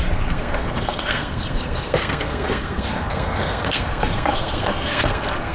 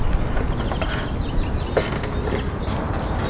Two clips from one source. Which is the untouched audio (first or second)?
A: second